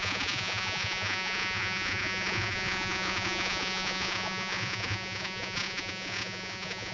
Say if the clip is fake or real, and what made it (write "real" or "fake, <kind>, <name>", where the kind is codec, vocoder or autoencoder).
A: fake, vocoder, Vocos